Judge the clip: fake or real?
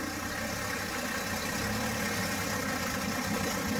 real